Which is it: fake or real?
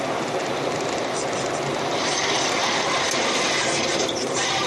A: real